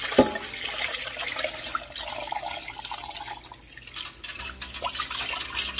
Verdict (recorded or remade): recorded